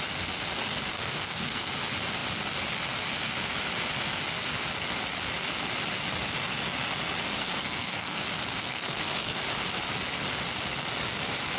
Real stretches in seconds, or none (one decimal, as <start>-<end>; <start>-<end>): 0.0-0.9; 1.7-7.4; 8.2-8.6; 9.4-11.6